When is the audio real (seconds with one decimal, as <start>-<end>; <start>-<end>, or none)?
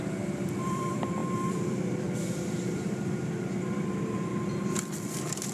none